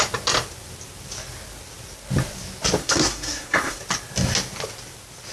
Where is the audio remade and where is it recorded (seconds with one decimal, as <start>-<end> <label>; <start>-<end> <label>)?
0.0-2.8 recorded; 2.8-3.8 remade; 3.8-5.3 recorded